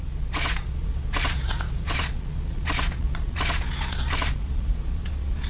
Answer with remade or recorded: remade